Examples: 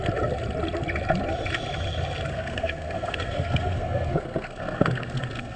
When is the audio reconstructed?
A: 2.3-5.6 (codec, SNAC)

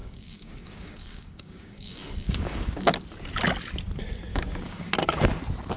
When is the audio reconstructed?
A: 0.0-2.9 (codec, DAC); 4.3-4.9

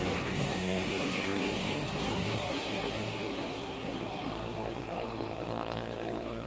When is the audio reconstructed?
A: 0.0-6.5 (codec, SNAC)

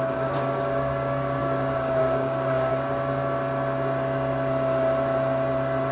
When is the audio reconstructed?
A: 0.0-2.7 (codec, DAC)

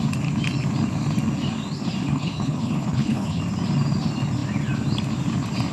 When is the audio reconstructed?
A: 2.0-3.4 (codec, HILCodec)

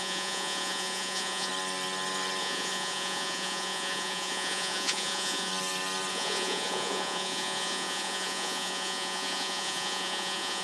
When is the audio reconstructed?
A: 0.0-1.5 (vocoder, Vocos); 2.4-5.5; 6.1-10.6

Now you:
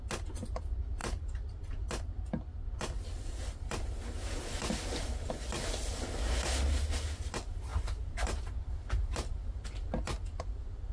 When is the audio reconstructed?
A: 1.0-1.6 (vocoder, BigVGAN v2)